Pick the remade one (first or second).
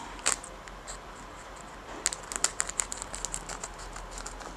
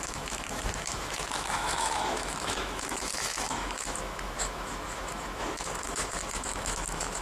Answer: second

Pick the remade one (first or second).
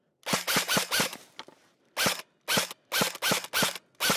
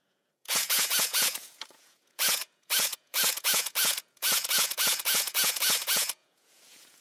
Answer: second